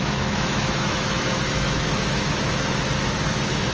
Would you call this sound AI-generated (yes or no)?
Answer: yes